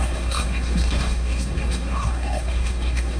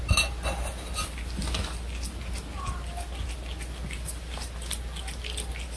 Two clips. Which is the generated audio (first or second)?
first